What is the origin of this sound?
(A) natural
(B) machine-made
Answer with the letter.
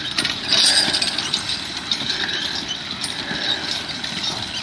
A